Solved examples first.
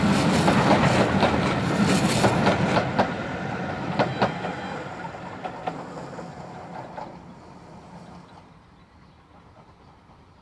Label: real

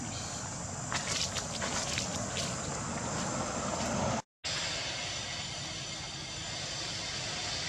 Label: real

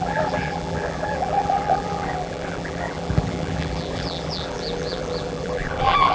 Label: fake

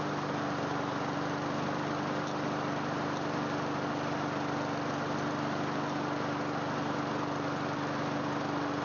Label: real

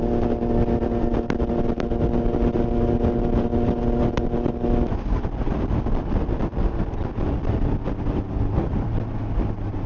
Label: real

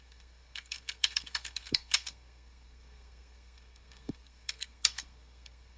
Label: fake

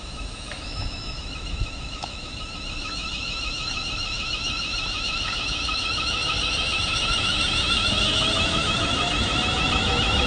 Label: fake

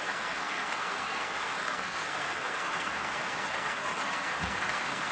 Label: fake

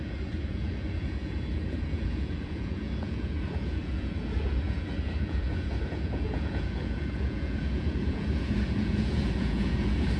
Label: fake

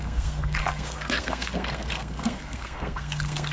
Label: fake